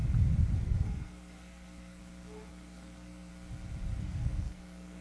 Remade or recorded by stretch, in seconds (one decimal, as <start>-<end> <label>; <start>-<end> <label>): 0.0-0.6 recorded; 0.6-2.0 remade; 2.0-2.5 recorded; 2.5-3.3 remade; 3.3-4.0 recorded; 4.0-5.0 remade